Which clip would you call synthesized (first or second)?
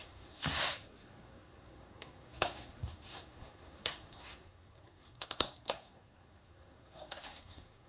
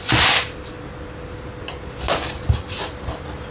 first